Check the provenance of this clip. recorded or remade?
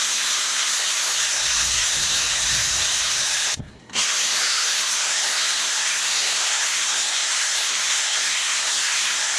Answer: remade